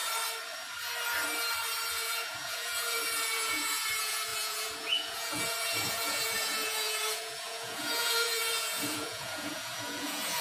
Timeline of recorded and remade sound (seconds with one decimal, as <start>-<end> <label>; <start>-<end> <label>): 0.0-1.9 recorded; 1.9-10.4 remade